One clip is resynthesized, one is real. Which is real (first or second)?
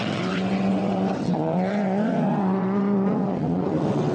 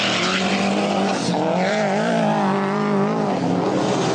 second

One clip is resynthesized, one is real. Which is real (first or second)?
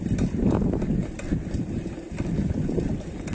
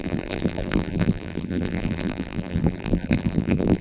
first